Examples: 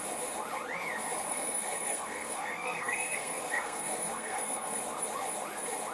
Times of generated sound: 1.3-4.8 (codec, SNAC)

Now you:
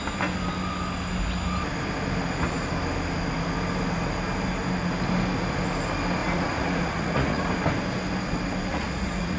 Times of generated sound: 6.2-7.5 (vocoder, Vocos); 8.7-9.4

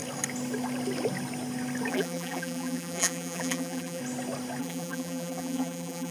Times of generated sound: 1.9-4.0 (vocoder, BigVGAN v2); 4.6-6.1

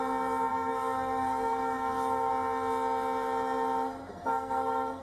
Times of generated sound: 0.5-2.3 (codec, SNAC); 4.1-5.0

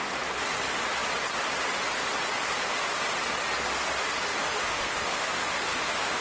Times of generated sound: 4.3-6.2 (autoencoder, DAC-VAE)

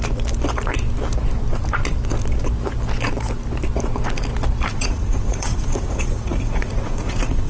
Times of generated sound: 4.7-7.5 (vocoder, Vocos)

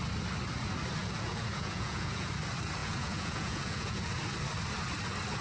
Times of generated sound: 1.0-2.3 (vocoder, Vocos); 2.8-4.1